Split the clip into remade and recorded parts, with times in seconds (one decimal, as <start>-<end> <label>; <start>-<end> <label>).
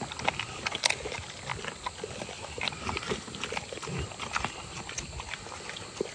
0.0-6.1 recorded